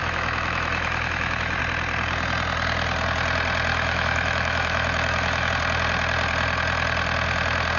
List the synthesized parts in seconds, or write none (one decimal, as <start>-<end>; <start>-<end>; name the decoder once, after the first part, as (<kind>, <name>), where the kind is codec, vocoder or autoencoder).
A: 0.0-1.6 (autoencoder, DAC-VAE); 3.7-5.5